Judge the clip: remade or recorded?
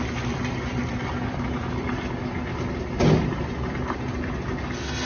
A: recorded